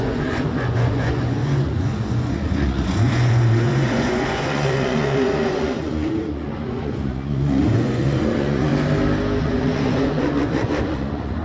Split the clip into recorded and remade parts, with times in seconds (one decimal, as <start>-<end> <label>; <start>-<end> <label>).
0.0-8.7 remade; 8.7-9.4 recorded; 9.4-11.4 remade

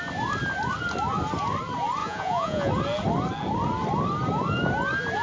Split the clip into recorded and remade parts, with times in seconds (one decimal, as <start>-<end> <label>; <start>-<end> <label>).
0.0-2.0 recorded; 2.0-2.7 remade; 2.7-5.2 recorded